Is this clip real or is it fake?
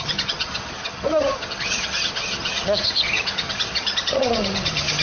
fake